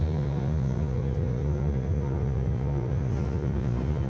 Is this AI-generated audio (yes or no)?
yes